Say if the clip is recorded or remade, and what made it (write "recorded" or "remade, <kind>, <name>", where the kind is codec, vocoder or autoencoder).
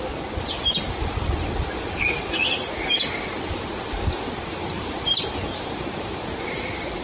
recorded